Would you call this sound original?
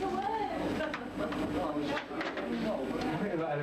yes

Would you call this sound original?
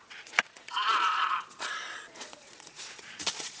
no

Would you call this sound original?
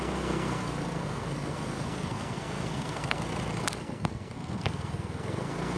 no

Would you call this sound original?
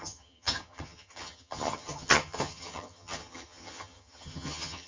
no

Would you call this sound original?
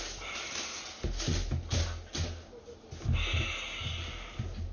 yes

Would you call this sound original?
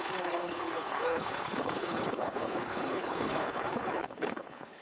no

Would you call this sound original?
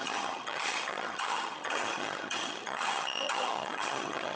no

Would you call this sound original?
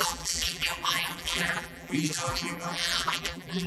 no